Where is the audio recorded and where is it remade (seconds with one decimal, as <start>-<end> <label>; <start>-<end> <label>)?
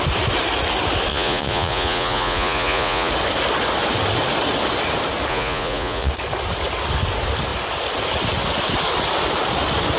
0.0-1.1 recorded; 1.1-3.1 remade; 3.1-5.3 recorded; 5.3-6.1 remade; 6.1-10.0 recorded